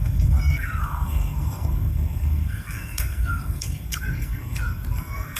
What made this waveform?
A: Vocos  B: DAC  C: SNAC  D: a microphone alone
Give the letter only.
C